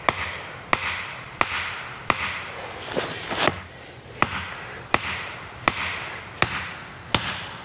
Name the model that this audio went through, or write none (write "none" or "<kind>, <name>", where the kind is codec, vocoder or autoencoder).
none